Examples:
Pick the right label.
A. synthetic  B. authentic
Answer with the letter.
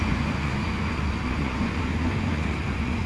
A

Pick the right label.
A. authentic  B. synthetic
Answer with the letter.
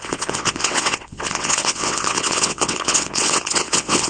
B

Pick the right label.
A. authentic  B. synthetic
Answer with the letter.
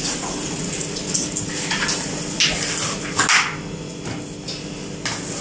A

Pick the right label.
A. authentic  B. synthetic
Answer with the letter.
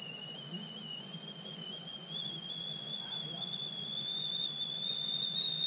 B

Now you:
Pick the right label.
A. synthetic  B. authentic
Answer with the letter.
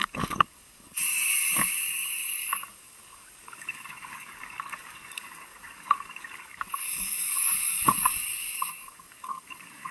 A